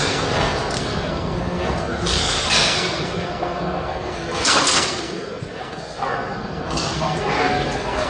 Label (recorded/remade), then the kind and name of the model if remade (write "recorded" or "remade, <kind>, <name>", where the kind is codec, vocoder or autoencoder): remade, codec, SNAC